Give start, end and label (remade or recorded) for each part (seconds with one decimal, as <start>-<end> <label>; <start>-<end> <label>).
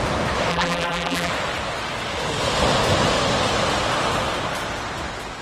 0.0-0.5 recorded; 0.5-1.3 remade; 1.3-5.4 recorded